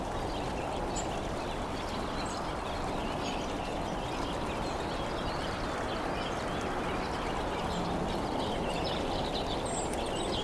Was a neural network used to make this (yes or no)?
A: no